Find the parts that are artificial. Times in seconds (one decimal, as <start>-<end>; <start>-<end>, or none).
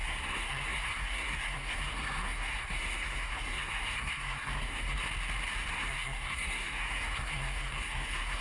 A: 0.0-5.0; 5.7-8.4